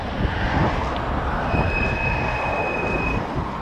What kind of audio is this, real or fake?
real